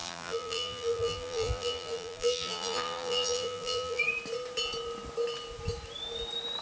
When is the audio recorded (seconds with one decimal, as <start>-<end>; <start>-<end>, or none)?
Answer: 4.0-6.6